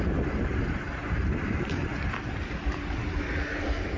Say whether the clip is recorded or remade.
recorded